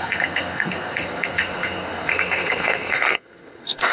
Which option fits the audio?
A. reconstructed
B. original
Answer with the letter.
A